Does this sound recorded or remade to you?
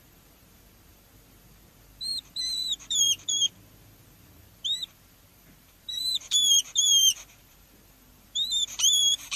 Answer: remade